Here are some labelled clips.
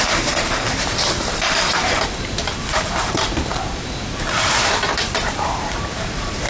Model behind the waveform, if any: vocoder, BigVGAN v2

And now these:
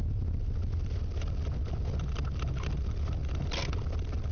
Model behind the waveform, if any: none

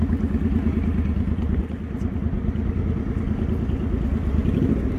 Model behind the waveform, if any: none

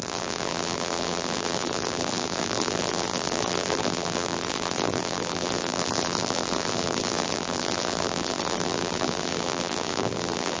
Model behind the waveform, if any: vocoder, BigVGAN v2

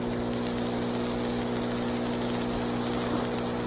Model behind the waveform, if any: none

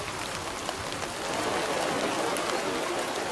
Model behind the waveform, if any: vocoder, BigVGAN v2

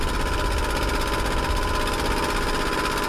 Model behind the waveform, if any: none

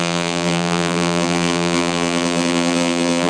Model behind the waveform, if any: vocoder, BigVGAN v2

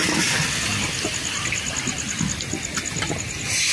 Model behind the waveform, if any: none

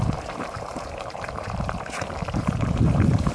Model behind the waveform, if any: vocoder, BigVGAN v2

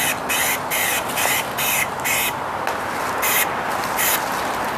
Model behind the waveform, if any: none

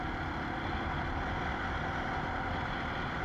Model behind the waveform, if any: none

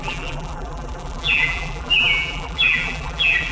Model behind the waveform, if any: vocoder, BigVGAN v2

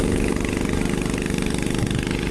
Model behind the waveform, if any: none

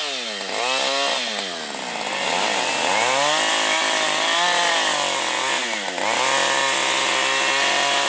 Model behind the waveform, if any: none